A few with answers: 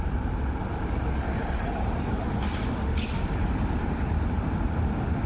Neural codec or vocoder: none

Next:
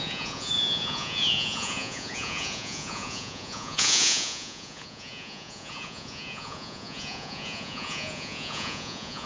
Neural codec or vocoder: vocoder, Vocos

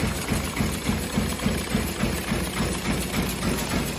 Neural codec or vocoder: none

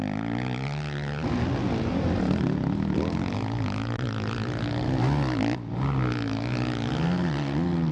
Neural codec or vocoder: none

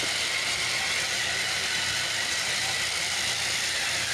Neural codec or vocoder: vocoder, BigVGAN v2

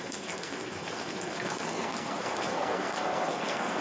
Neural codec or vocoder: codec, SNAC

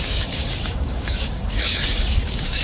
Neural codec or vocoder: codec, DAC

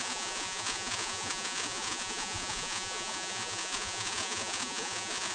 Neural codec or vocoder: vocoder, Vocos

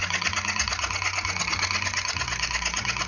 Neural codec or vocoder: vocoder, Vocos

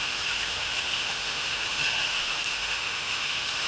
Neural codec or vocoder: autoencoder, DAC-VAE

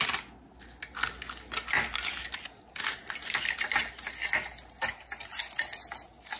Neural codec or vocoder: none